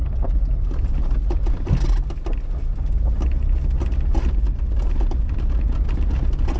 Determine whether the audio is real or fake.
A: real